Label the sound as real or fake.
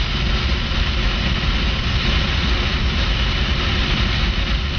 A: real